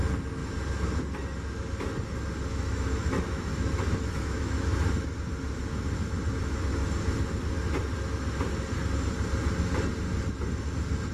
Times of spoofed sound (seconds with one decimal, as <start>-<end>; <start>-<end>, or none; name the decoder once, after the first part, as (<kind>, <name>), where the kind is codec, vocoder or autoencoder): 2.5-5.1 (autoencoder, DAC-VAE)